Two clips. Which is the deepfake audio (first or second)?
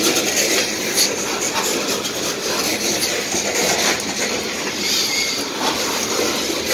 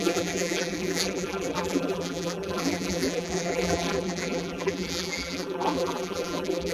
second